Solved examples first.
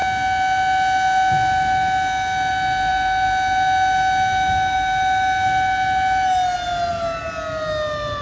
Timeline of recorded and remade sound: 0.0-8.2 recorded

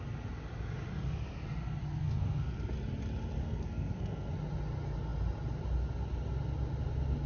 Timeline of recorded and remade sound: 0.0-2.0 recorded; 2.0-2.7 remade; 2.7-3.4 recorded; 3.4-4.3 remade; 4.3-7.3 recorded

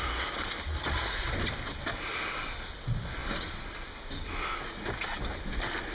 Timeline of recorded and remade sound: 0.0-5.9 recorded

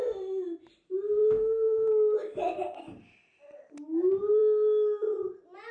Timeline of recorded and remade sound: 0.0-5.7 recorded

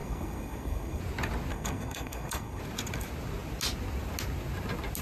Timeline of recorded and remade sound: 0.0-1.0 remade; 1.0-1.5 recorded; 1.5-2.6 remade; 2.6-5.0 recorded

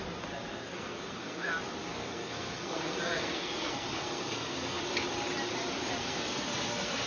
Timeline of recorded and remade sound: 0.0-0.5 recorded; 0.5-1.5 remade; 1.5-1.9 recorded; 1.9-4.8 remade; 4.8-6.0 recorded; 6.0-7.1 remade

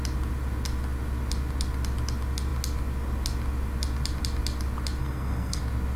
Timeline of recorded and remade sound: 0.0-5.0 recorded; 5.0-5.6 remade; 5.6-6.0 recorded